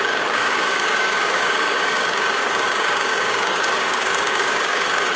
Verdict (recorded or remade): remade